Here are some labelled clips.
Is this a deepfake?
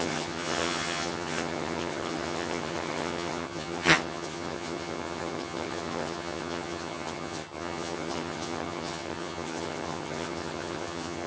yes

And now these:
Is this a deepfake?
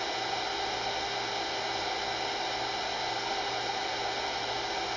no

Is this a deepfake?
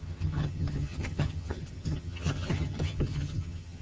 yes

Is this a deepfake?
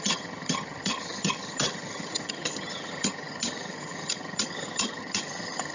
yes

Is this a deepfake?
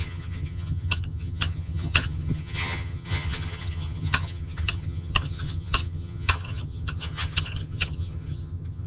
yes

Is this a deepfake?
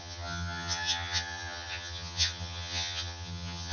yes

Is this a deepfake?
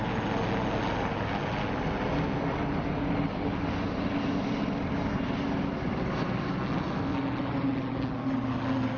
no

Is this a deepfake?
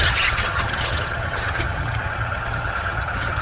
yes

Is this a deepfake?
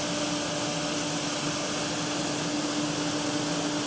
no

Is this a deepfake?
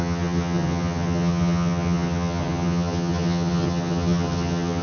yes